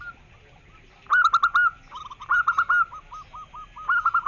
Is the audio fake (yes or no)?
no